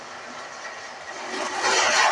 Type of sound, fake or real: real